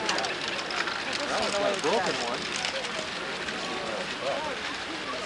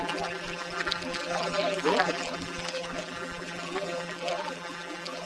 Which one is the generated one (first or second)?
second